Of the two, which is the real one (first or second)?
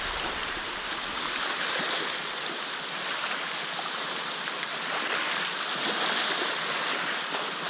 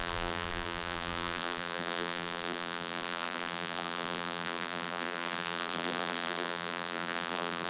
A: first